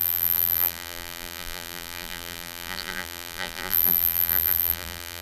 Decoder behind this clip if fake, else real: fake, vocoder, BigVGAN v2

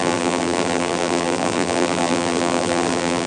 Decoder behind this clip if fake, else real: fake, vocoder, BigVGAN v2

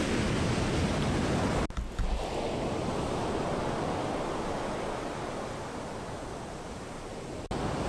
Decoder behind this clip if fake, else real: real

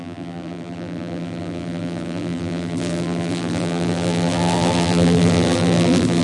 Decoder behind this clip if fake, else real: fake, vocoder, BigVGAN v2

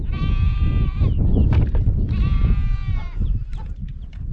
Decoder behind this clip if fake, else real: real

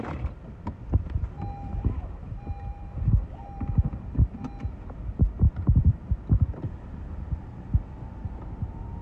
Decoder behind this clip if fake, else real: fake, vocoder, BigVGAN v2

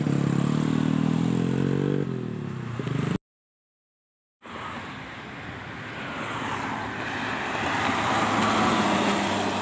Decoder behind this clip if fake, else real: real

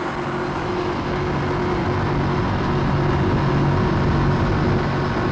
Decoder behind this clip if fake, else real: real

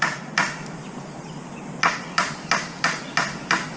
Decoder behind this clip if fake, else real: real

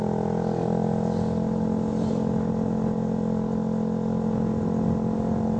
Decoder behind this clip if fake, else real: real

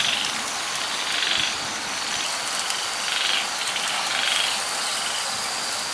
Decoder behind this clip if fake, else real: real